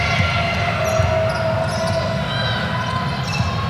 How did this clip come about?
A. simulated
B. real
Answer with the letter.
B